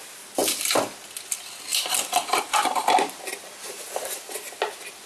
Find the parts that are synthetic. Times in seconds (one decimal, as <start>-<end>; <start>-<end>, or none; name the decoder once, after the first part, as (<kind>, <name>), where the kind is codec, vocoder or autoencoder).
none